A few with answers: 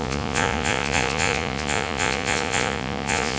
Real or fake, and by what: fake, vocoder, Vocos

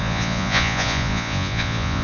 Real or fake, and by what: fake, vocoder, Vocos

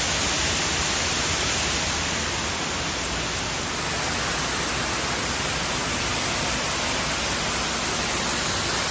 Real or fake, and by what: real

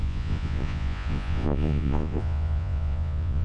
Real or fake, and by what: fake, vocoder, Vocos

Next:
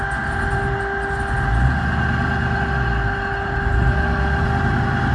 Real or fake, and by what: real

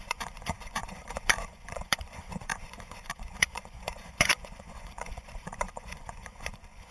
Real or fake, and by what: fake, vocoder, Vocos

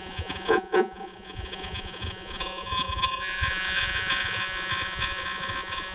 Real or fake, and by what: fake, vocoder, Vocos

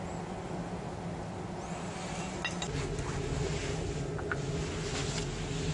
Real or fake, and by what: real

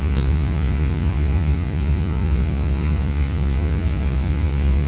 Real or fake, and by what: fake, vocoder, Vocos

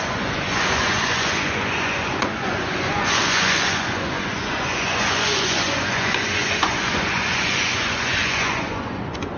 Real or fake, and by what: fake, vocoder, Vocos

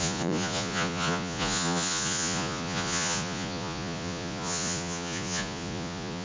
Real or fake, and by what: fake, vocoder, Vocos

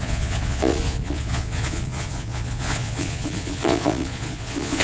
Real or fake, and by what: fake, vocoder, Vocos